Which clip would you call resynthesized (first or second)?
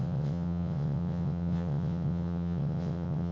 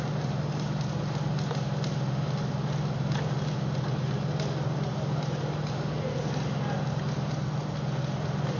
first